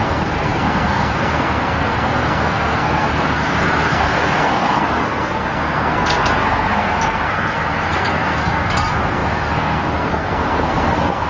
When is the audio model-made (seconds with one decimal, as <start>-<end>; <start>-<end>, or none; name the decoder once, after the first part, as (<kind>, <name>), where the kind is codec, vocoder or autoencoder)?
0.0-11.3 (codec, SNAC)